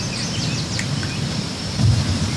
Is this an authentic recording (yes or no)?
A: yes